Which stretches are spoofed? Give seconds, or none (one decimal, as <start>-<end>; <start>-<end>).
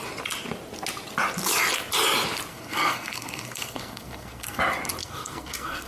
2.5-4.6; 5.0-5.9